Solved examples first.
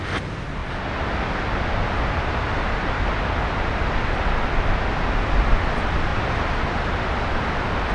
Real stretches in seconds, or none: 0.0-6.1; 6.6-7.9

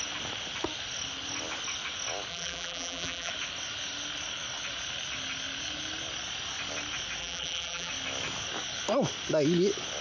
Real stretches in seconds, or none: 0.0-2.3; 3.3-7.2; 7.9-10.0

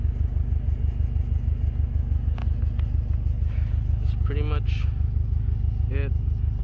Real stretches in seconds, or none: 0.0-6.6

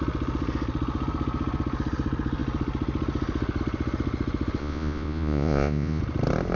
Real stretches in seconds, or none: 0.0-4.6; 6.0-6.6

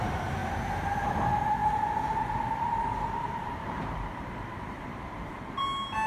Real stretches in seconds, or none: 0.0-0.4; 1.1-1.6; 5.3-6.1

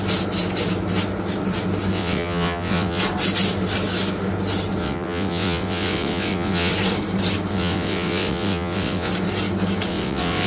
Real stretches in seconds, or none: 0.0-1.9; 3.0-4.8; 6.7-7.5; 9.1-9.9

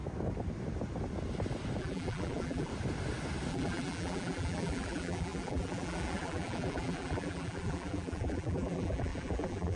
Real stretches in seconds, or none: 0.0-1.8; 2.7-3.5